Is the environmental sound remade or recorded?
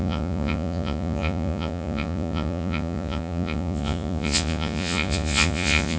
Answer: remade